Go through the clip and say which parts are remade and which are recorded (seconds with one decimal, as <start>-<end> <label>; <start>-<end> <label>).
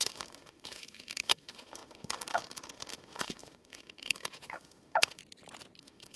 0.0-5.2 remade; 5.2-5.8 recorded; 5.8-6.2 remade